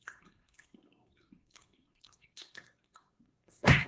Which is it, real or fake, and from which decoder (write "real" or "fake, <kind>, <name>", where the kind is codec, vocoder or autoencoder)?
fake, codec, SNAC